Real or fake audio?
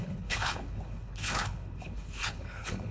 fake